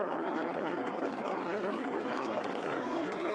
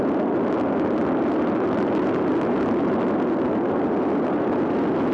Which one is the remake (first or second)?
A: first